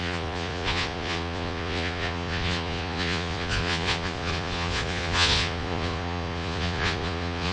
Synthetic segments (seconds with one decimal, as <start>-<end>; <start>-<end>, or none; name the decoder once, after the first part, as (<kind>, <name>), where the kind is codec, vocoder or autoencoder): 0.0-7.5 (vocoder, Vocos)